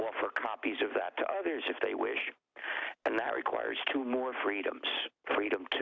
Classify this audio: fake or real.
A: real